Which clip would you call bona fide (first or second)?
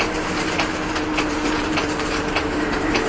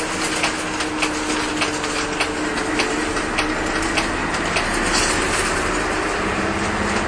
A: second